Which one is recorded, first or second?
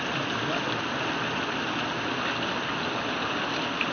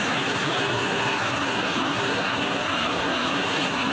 first